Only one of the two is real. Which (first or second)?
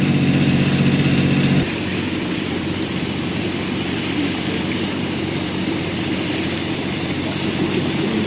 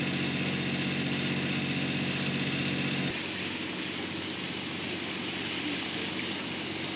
second